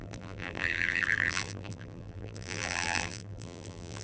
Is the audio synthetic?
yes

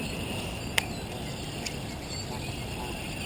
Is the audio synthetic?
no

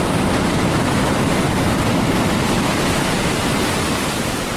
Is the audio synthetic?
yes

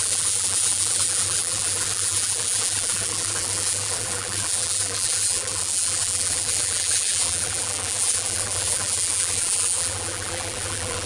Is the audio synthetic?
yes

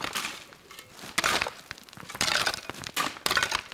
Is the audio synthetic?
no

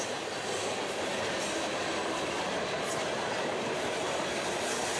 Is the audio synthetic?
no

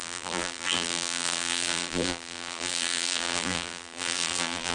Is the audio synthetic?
yes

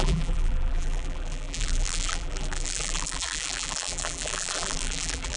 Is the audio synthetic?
yes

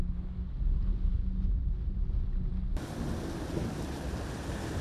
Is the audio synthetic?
no